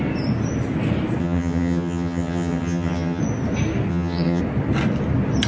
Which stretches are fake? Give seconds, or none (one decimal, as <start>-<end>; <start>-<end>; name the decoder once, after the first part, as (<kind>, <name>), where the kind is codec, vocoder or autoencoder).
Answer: 1.2-3.2 (vocoder, HiFi-GAN); 3.9-4.4